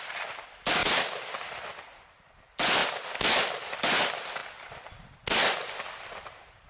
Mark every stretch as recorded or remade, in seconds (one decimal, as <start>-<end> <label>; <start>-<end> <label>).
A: 0.0-2.8 remade; 2.8-3.8 recorded; 3.8-4.4 remade; 4.4-4.9 recorded; 4.9-6.7 remade